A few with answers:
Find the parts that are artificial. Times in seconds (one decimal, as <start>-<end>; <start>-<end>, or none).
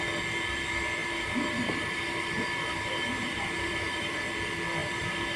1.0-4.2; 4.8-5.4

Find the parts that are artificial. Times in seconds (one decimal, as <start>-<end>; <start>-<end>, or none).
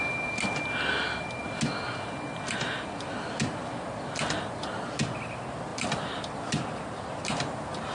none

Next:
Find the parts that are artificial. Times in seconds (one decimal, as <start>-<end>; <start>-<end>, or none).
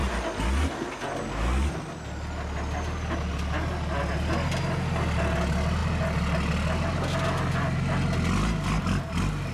none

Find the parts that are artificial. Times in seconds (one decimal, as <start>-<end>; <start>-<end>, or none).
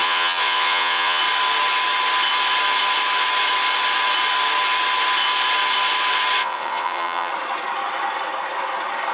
0.0-1.2; 6.4-7.3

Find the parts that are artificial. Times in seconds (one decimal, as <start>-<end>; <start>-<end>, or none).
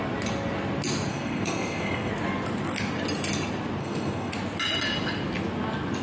1.1-2.1; 3.8-4.3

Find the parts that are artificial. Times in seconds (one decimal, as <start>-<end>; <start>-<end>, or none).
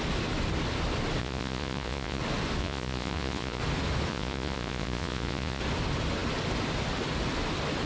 1.2-2.2; 2.6-3.6; 4.1-5.6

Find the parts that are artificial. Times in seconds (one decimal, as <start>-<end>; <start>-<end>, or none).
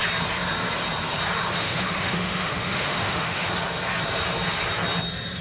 1.6-3.5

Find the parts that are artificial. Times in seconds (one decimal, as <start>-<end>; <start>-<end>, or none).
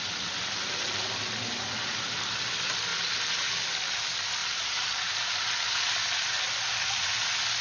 2.9-3.5; 4.4-5.3